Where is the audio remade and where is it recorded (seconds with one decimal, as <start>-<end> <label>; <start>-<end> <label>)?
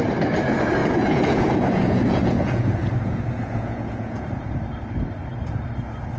0.0-0.8 recorded; 0.8-4.5 remade; 4.5-6.2 recorded